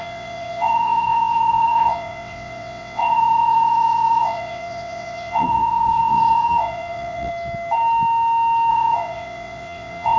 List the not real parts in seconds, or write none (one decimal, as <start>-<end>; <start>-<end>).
0.0-7.3; 8.7-10.2